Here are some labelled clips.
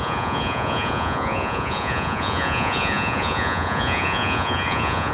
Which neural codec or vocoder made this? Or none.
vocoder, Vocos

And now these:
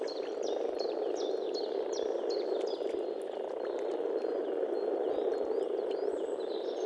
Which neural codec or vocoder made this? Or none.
none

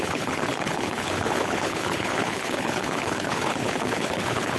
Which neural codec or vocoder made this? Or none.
codec, HILCodec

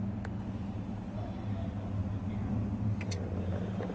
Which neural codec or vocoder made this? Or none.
none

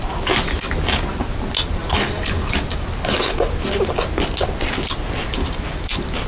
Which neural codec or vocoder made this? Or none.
none